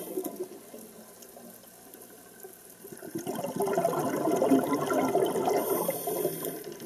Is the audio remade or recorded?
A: recorded